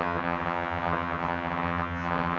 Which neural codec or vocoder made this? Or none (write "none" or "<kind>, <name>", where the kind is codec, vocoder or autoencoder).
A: vocoder, HiFi-GAN